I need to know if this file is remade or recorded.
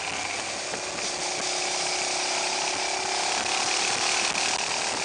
recorded